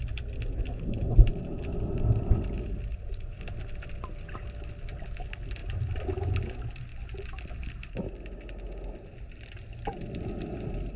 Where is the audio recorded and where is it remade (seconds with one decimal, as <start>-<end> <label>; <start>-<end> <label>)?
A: 0.0-2.9 recorded; 2.9-3.4 remade; 3.4-11.0 recorded